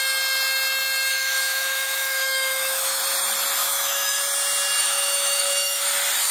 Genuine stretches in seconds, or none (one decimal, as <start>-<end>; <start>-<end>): 0.0-1.1; 3.0-3.6; 4.2-4.8; 5.8-6.3